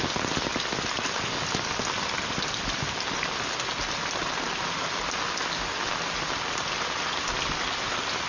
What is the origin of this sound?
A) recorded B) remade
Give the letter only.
A